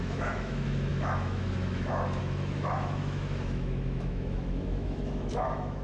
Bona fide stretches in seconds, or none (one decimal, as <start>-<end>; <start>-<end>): none